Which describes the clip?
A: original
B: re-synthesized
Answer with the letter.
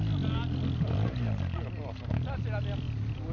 A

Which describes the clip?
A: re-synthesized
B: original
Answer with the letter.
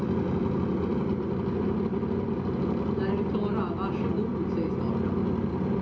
B